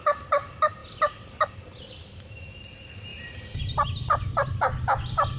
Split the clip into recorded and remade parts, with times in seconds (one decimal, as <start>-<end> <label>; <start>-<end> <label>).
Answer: 0.0-5.4 remade